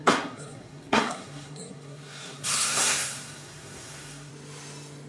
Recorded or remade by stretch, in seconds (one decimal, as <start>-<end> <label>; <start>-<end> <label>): 0.0-4.3 remade; 4.3-5.1 recorded